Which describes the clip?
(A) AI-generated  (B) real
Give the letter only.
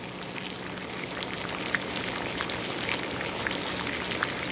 B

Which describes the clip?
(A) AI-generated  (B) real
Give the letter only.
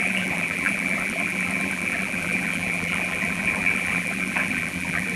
A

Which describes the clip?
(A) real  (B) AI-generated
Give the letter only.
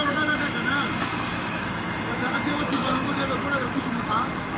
B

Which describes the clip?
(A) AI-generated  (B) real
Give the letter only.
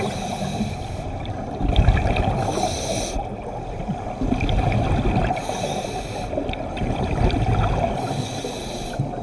B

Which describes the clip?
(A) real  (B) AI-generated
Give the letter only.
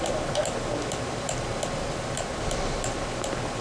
A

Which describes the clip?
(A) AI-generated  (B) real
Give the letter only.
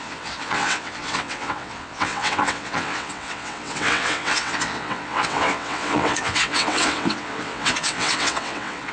A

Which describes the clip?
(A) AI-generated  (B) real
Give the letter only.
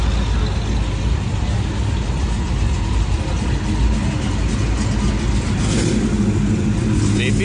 B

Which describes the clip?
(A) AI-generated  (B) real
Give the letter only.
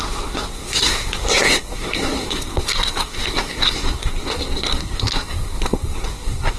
A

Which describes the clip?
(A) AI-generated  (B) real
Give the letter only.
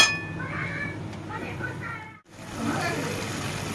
B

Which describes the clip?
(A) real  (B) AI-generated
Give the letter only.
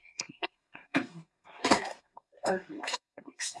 B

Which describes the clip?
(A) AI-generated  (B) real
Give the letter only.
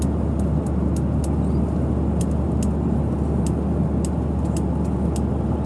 B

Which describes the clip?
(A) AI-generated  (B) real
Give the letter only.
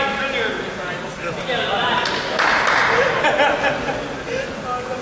B